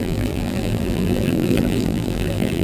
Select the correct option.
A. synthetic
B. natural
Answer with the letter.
A